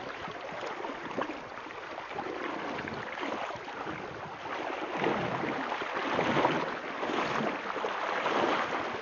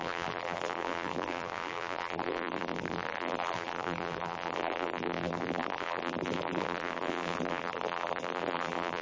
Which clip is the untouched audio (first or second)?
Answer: first